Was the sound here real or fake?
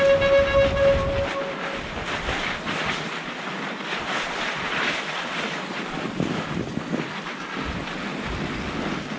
real